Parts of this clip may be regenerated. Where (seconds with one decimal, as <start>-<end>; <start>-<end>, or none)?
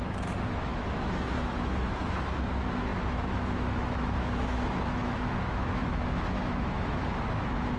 0.0-7.8